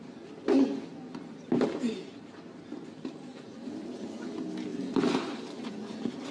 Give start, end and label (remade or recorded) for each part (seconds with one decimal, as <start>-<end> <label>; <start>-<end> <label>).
0.0-6.3 recorded